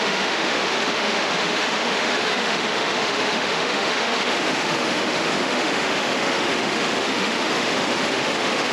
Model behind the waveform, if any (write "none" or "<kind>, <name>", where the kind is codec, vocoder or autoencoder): autoencoder, DAC-VAE